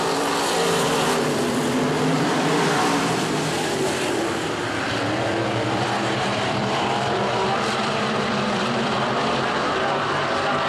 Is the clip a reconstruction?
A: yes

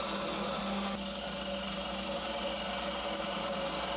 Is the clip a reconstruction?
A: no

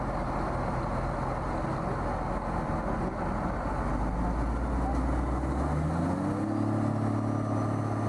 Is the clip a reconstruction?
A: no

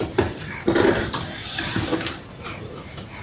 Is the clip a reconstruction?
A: no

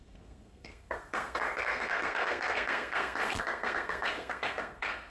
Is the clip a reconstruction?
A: yes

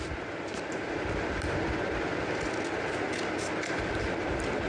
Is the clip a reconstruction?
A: no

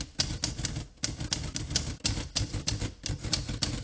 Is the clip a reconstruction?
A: no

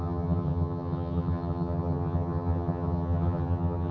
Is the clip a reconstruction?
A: yes